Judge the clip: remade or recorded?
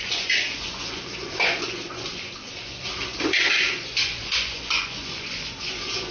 remade